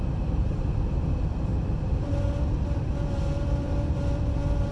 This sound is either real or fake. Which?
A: real